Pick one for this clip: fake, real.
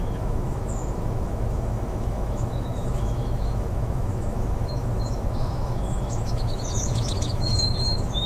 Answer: fake